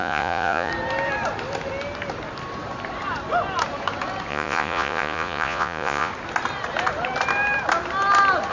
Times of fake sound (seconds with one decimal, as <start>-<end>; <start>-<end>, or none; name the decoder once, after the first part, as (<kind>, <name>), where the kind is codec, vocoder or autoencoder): 0.0-0.7 (vocoder, Vocos); 4.3-6.1